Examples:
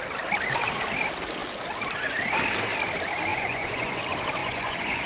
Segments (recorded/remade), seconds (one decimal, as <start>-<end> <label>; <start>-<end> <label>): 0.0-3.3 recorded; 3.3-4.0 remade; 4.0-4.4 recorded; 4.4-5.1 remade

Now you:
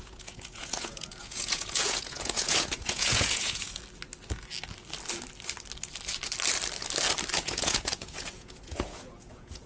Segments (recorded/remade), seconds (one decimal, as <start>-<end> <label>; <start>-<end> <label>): 0.0-3.8 remade; 3.8-7.3 recorded; 7.3-9.7 remade

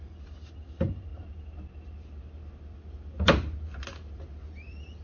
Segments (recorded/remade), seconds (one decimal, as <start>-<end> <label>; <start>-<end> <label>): 0.0-5.0 recorded

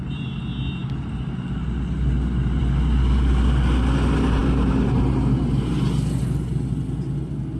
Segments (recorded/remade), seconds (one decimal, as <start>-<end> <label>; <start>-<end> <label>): 0.0-7.6 recorded

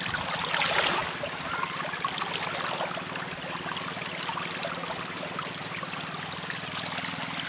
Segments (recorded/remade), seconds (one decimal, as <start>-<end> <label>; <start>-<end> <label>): 0.0-7.5 recorded